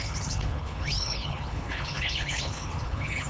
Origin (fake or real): fake